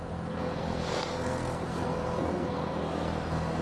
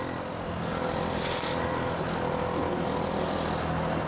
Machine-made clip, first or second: first